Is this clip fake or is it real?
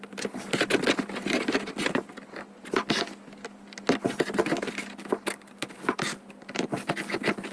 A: real